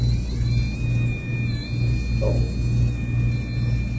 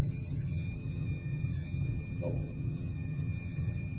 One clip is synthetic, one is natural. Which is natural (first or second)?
first